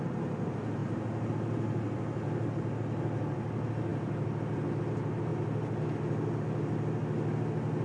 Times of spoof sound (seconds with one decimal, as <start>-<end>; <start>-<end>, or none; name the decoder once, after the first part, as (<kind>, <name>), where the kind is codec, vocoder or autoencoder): none